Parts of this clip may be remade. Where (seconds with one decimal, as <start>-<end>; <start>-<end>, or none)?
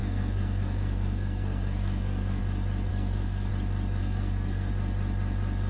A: 0.0-2.4; 2.9-3.5; 4.0-4.7